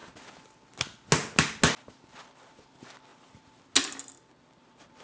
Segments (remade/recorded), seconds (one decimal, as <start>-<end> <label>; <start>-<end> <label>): 0.0-5.0 recorded